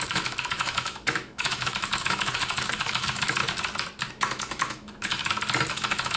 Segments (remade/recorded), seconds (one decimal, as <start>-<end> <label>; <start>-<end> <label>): 0.0-3.4 remade; 3.4-4.1 recorded; 4.1-5.2 remade; 5.2-5.7 recorded; 5.7-6.2 remade